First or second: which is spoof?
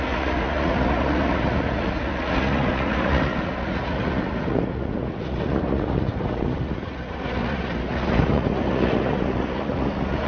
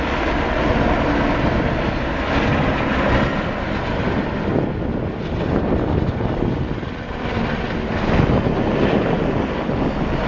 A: first